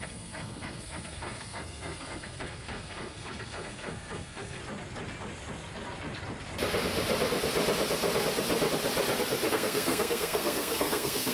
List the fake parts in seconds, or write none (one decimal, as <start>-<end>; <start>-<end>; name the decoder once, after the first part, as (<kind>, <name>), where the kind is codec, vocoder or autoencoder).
0.0-4.6 (codec, SNAC); 9.5-11.3